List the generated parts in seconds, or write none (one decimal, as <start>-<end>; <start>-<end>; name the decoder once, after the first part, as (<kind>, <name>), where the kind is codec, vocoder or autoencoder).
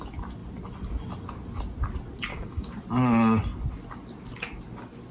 2.3-2.8 (codec, DAC)